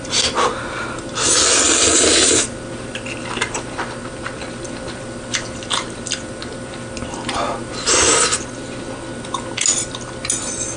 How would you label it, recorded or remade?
recorded